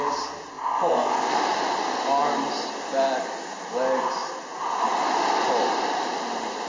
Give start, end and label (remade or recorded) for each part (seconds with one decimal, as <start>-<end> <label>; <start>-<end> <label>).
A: 0.0-0.5 recorded; 0.5-1.3 remade; 1.3-6.7 recorded